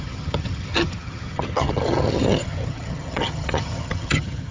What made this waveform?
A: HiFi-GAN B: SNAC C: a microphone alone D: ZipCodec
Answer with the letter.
A